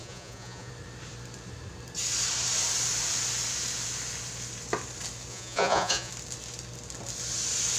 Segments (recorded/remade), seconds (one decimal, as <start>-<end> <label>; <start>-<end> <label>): 0.0-0.7 remade; 0.7-5.3 recorded; 5.3-6.1 remade; 6.1-7.8 recorded